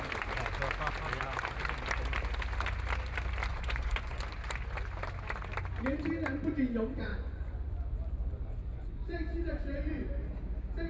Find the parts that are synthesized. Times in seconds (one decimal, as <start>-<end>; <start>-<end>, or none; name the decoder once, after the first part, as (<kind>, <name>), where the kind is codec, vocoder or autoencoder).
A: 3.5-4.2 (vocoder, Vocos); 7.1-10.1